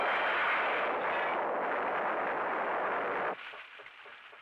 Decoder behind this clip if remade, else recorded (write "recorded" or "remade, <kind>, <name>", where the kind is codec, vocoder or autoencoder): recorded